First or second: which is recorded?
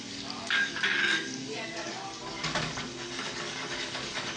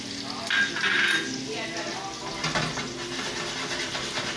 second